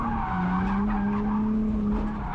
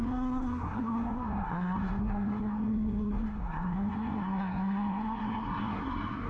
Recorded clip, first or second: first